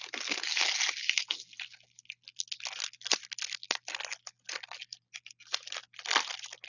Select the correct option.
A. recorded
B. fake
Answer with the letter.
A